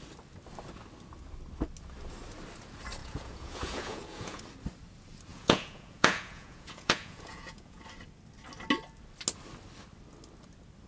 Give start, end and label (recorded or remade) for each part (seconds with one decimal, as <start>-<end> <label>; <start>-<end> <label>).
0.0-3.0 recorded; 3.0-4.4 remade; 4.4-5.3 recorded; 5.3-7.8 remade; 7.8-10.9 recorded